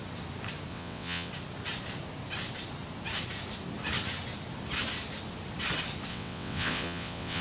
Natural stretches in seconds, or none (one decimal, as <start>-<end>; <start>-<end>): 0.0-0.7; 1.3-6.1